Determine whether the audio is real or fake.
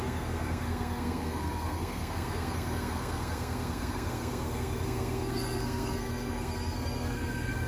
fake